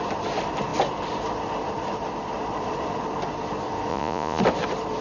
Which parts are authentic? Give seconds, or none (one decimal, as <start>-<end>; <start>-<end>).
0.0-3.9; 4.4-5.0